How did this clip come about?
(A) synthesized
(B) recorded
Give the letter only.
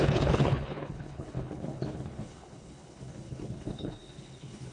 A